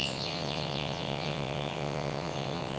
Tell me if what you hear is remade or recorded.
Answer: remade